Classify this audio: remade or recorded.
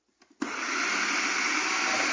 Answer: recorded